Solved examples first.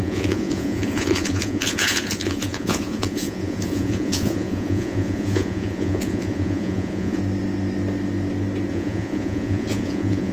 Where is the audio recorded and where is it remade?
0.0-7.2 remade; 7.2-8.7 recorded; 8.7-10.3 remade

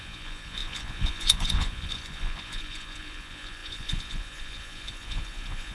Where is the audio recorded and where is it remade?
0.0-5.7 remade